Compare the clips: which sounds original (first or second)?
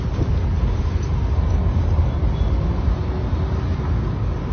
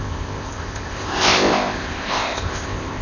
first